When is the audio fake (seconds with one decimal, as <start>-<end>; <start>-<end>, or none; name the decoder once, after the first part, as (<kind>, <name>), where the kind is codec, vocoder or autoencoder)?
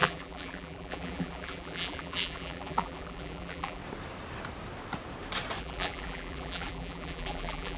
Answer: 0.0-3.8 (vocoder, BigVGAN v2); 5.6-7.8